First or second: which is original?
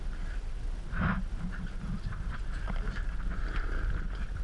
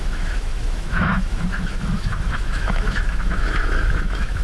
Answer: first